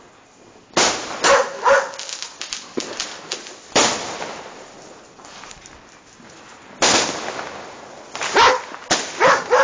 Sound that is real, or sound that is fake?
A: real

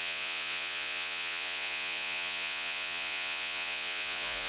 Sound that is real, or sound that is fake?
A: fake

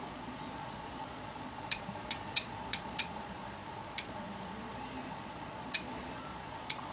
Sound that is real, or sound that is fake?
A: fake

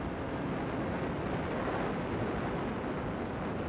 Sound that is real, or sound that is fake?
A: real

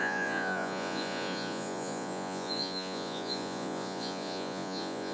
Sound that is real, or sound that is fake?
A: fake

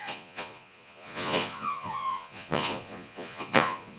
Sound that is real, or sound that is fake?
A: fake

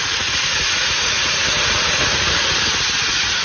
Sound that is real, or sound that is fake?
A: fake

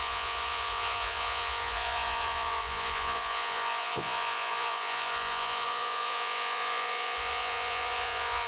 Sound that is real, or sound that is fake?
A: fake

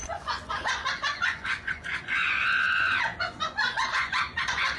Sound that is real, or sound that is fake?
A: fake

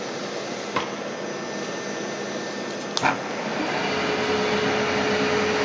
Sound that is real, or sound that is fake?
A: real